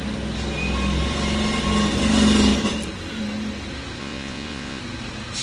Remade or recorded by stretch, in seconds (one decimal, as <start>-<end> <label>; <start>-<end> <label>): 0.0-4.0 recorded; 4.0-4.8 remade; 4.8-5.4 recorded